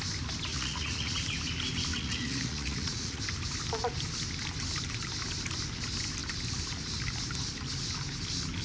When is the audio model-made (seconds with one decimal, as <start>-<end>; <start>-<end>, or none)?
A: 0.5-1.2; 1.9-3.2